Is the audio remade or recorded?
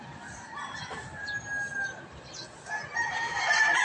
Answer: recorded